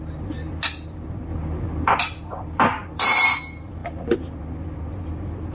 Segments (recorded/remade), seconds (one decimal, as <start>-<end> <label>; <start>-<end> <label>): 0.0-5.5 recorded